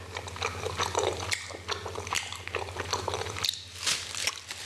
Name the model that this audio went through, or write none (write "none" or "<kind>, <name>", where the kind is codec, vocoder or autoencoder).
none